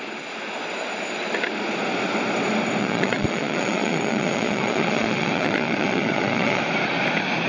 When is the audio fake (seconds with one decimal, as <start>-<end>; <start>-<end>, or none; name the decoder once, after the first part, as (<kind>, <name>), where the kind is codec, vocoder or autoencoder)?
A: 2.8-6.6 (vocoder, Vocos)